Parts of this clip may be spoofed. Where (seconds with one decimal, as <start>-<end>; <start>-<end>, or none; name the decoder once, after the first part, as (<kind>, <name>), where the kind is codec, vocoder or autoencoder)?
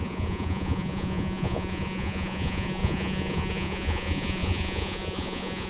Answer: 0.0-5.7 (vocoder, Vocos)